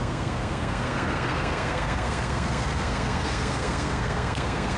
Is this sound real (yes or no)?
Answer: no